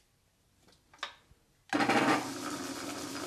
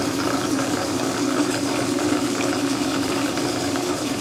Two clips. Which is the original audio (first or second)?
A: first